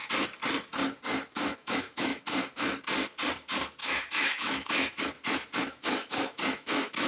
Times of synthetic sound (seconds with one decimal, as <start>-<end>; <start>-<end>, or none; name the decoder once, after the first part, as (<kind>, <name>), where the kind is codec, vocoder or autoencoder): 1.3-2.2 (autoencoder, DAC-VAE); 3.8-5.0; 5.6-7.1

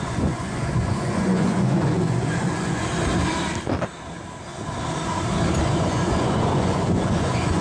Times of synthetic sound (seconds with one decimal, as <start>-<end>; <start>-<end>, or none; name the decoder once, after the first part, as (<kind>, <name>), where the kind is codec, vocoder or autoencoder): 0.0-2.9 (vocoder, Vocos); 5.6-7.6